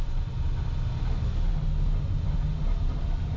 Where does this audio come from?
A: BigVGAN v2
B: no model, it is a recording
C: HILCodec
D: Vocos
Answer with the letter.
B